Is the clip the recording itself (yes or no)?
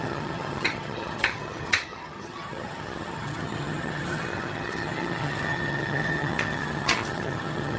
no